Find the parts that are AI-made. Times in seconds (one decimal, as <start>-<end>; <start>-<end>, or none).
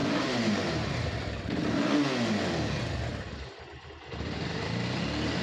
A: 0.0-1.8; 3.1-4.0